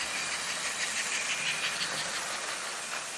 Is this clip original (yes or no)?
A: yes